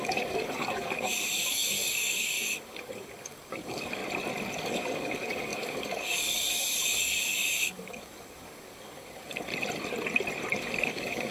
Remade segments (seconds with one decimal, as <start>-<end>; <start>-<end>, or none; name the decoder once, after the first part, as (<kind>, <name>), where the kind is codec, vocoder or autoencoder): 0.0-4.0 (codec, DAC); 4.6-9.5; 10.6-11.3